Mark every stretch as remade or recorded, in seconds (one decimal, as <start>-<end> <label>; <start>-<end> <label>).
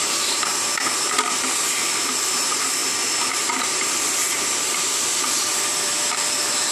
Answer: 0.0-0.5 remade; 0.5-1.6 recorded; 1.6-2.8 remade; 2.8-3.3 recorded; 3.3-6.7 remade